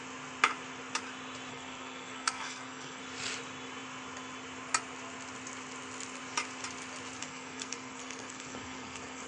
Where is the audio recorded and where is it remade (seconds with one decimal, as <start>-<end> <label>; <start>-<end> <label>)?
0.0-1.5 recorded; 1.5-3.0 remade; 3.0-7.2 recorded; 7.2-9.3 remade